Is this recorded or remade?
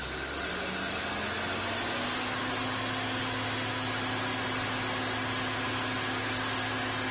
recorded